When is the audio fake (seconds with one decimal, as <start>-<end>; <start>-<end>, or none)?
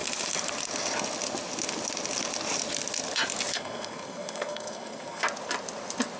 3.5-5.2